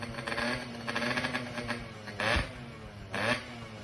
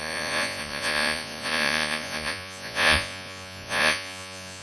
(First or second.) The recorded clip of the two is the first